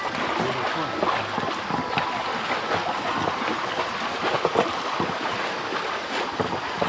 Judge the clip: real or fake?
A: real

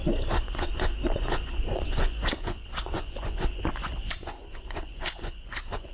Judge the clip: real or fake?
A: fake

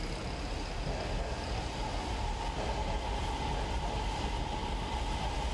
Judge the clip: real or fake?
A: real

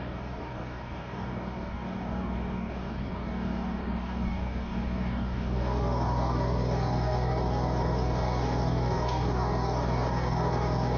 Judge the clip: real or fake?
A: fake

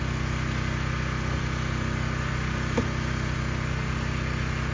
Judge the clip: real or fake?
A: real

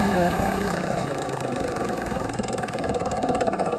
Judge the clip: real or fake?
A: fake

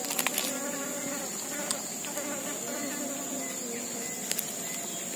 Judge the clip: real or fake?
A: real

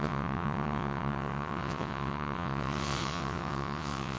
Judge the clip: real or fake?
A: fake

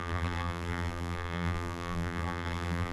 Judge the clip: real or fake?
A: fake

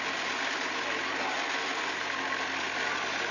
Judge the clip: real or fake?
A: real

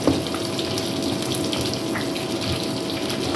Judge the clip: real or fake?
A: real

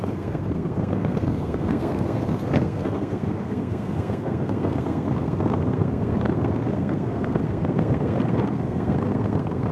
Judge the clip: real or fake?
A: fake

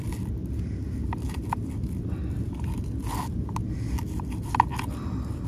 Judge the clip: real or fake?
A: real